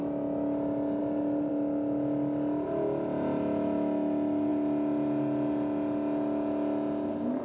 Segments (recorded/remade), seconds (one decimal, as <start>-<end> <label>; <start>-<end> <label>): 0.0-1.0 recorded; 1.0-1.5 remade; 1.5-7.4 recorded